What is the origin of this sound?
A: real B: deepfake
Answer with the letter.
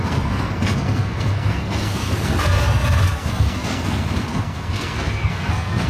B